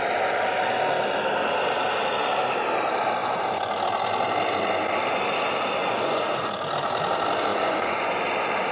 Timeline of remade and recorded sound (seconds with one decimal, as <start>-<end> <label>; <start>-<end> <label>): 0.0-5.8 recorded; 5.8-6.5 remade; 6.5-7.5 recorded; 7.5-8.2 remade; 8.2-8.7 recorded